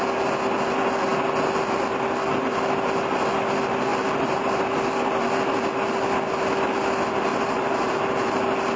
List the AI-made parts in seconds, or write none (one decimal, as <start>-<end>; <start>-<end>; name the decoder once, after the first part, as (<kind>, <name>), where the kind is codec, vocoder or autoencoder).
3.9-4.6 (vocoder, BigVGAN v2); 7.3-7.9